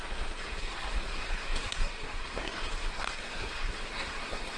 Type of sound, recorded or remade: remade